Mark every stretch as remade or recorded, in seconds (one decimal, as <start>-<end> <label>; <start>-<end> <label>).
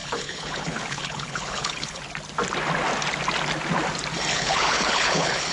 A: 0.0-2.0 remade; 2.0-4.3 recorded; 4.3-5.5 remade